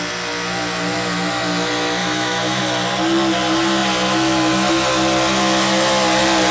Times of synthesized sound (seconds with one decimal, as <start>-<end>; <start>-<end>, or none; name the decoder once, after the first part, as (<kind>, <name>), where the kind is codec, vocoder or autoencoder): 2.0-2.6 (autoencoder, DAC-VAE)

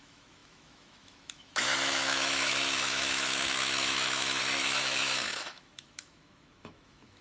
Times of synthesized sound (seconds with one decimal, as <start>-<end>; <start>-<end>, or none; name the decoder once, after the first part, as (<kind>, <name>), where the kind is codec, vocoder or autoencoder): 0.0-7.2 (autoencoder, DAC-VAE)

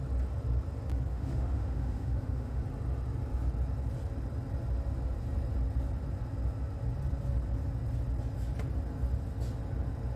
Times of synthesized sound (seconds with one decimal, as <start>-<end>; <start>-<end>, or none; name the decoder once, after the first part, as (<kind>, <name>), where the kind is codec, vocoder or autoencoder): 1.1-2.6 (autoencoder, DAC-VAE)

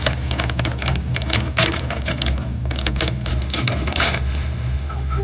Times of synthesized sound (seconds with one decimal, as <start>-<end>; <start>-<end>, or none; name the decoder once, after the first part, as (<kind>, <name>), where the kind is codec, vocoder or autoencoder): 3.3-5.2 (autoencoder, DAC-VAE)